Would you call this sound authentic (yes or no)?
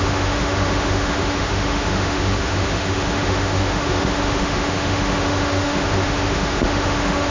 no